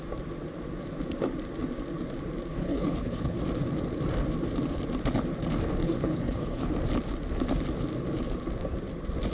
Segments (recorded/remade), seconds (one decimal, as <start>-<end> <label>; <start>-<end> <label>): 0.0-2.5 recorded; 2.5-3.4 remade; 3.4-5.8 recorded; 5.8-6.7 remade; 6.7-9.3 recorded